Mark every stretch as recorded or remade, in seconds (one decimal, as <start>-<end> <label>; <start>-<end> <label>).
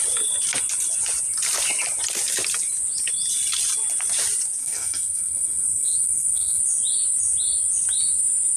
0.0-4.6 recorded; 4.6-6.6 remade; 6.6-8.6 recorded